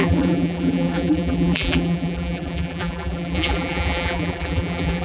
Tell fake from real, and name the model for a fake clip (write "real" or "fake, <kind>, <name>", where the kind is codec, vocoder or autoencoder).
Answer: fake, vocoder, BigVGAN v2